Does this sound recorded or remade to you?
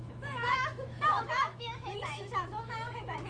remade